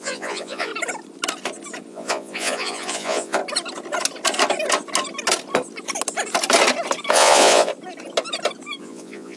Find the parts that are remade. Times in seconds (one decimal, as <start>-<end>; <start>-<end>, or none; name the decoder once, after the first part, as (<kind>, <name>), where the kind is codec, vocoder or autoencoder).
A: 0.0-0.7 (vocoder, Vocos); 1.9-3.4; 7.1-7.7; 8.8-9.4

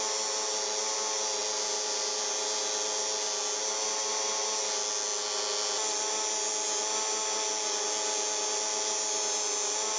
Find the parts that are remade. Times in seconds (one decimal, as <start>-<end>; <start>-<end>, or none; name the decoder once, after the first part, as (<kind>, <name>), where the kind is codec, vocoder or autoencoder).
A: none